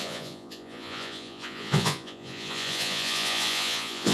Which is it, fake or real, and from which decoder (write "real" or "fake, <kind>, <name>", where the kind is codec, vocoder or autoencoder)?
fake, vocoder, Vocos